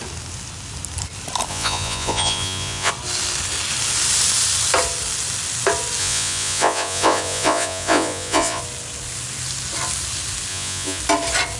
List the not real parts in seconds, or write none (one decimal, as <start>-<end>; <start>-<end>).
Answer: 1.5-2.9; 6.0-8.6; 10.5-11.0